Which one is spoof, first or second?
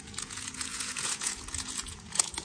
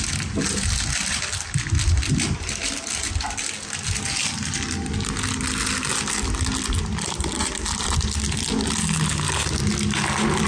first